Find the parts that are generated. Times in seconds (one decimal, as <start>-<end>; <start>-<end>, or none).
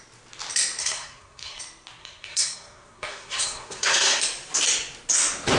0.8-1.6; 2.0-4.2